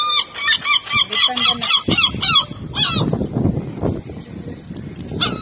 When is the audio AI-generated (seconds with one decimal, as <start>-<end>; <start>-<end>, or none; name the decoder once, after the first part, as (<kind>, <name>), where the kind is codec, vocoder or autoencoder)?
none